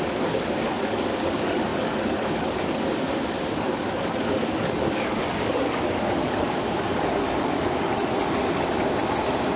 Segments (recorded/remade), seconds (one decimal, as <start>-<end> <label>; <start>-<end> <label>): 0.0-7.9 remade; 7.9-9.6 recorded

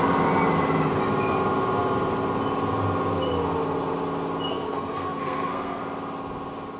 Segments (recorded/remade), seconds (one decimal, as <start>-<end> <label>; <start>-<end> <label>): 0.0-4.5 recorded; 4.5-5.8 remade; 5.8-6.8 recorded

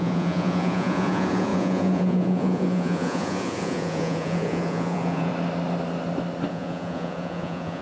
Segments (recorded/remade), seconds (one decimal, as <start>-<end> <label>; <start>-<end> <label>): 0.0-5.3 remade; 5.3-6.5 recorded; 6.5-7.8 remade

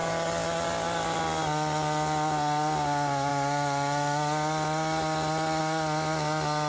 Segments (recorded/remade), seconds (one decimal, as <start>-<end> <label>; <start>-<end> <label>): 0.0-6.7 recorded

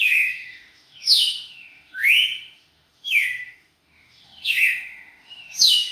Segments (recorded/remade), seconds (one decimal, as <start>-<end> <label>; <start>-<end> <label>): 0.0-5.9 remade

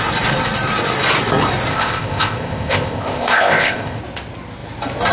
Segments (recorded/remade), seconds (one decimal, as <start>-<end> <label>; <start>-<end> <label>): 0.0-1.7 recorded; 1.7-4.0 remade; 4.0-5.1 recorded

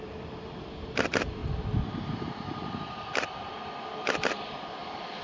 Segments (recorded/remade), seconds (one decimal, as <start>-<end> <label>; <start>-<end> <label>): 0.0-5.2 recorded

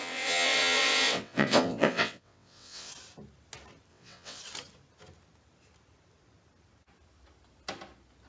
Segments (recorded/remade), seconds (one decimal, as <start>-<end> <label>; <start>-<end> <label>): 0.0-2.9 remade; 2.9-3.9 recorded; 3.9-4.4 remade; 4.4-8.3 recorded